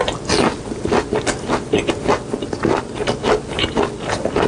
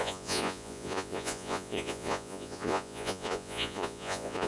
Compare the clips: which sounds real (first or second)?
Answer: first